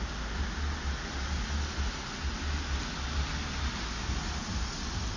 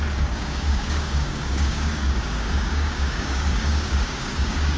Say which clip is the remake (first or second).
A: second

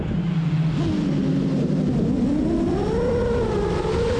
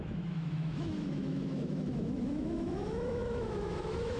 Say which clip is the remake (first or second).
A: second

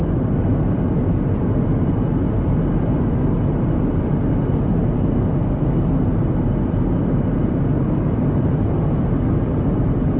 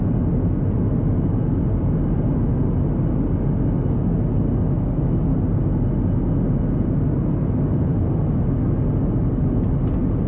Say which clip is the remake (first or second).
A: first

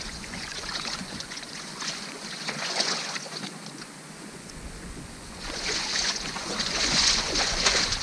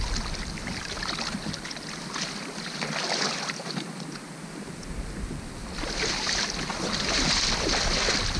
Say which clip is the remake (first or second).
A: first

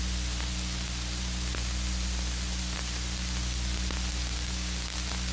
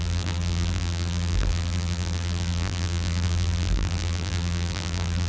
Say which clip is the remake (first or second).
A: second